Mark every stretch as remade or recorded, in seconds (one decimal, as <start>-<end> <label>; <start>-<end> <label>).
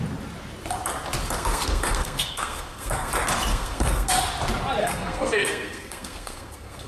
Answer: 0.0-1.2 recorded; 1.2-3.1 remade; 3.1-3.5 recorded; 3.5-4.2 remade; 4.2-4.8 recorded; 4.8-6.9 remade